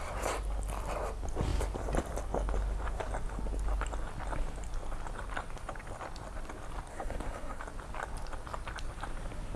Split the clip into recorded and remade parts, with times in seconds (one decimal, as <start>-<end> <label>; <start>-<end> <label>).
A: 0.0-6.9 recorded; 6.9-7.6 remade; 7.6-9.6 recorded